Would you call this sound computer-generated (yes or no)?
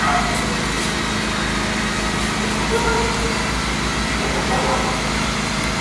no